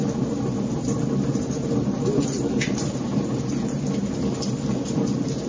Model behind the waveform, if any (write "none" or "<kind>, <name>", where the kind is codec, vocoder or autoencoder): none